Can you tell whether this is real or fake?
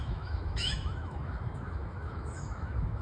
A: fake